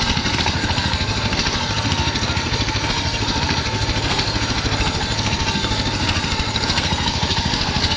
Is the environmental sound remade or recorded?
remade